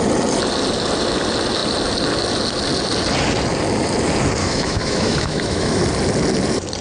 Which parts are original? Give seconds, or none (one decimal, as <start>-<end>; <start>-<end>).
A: 0.0-4.4; 5.8-6.8